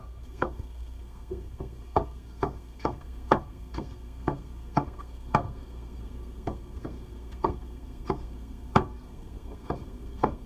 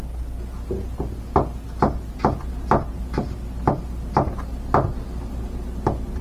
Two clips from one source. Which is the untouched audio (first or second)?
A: second